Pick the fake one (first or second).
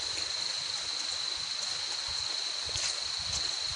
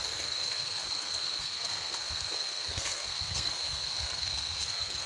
second